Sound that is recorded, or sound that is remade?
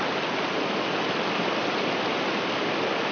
recorded